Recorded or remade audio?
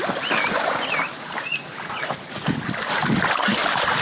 recorded